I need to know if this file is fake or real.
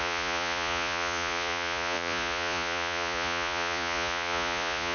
fake